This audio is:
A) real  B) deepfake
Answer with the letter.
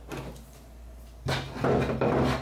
A